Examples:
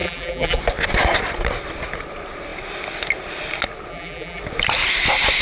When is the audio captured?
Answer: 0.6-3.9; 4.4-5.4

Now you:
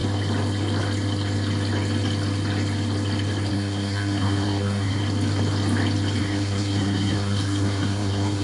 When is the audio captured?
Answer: 0.0-3.5; 5.0-6.2

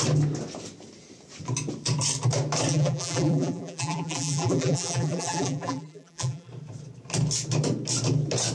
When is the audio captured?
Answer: 0.0-2.7; 6.5-8.5

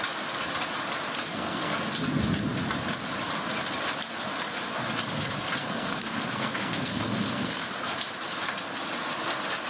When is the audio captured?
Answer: 0.0-1.3; 1.8-5.6; 7.6-9.7

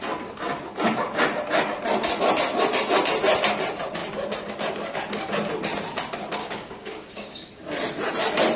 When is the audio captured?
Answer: 0.0-6.4; 7.5-8.6

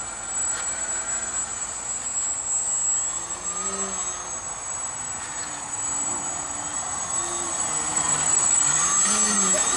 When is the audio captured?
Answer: 0.0-7.9; 8.8-9.8